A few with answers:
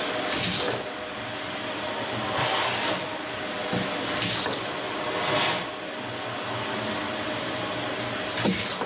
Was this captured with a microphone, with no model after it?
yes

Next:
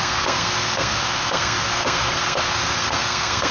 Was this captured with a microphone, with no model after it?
no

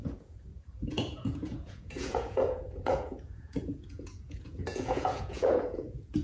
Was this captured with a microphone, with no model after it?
no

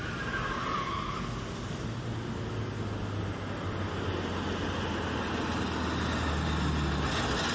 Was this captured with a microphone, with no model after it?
yes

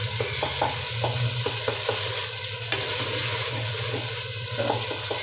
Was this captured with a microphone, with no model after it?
yes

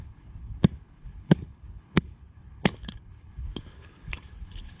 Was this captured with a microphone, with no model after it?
no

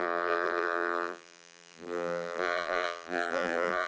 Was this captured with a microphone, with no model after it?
no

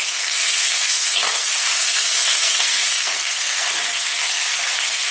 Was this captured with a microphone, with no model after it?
no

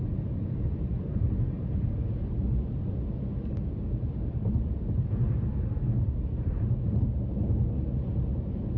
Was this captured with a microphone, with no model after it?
yes